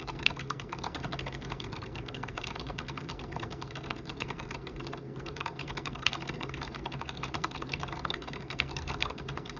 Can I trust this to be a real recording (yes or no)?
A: no